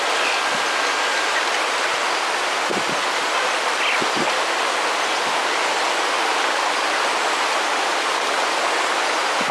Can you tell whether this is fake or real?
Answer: real